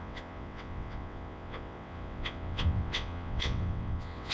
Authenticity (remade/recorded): remade